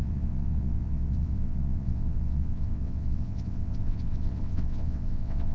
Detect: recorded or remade remade